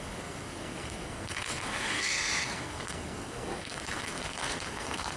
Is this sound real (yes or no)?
no